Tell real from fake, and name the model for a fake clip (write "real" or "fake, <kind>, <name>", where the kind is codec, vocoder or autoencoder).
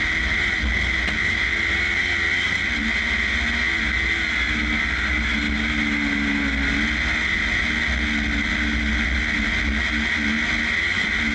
real